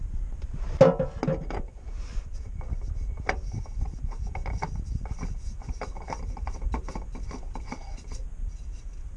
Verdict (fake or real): real